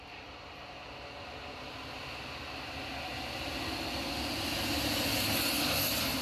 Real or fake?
real